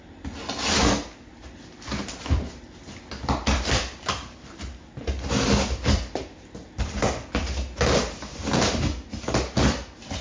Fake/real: real